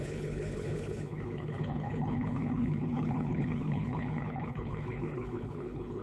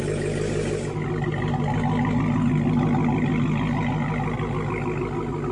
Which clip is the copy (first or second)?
first